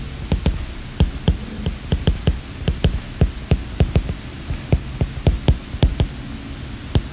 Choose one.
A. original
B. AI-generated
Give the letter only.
A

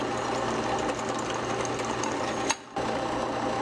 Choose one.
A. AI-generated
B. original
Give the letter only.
B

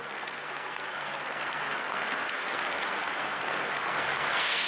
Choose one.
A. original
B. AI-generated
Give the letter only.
B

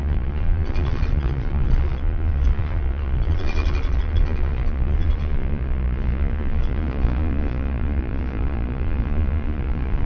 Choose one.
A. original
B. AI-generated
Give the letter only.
B